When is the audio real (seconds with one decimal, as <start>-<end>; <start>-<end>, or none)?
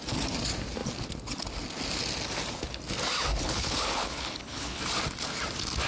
0.0-3.3; 4.8-5.9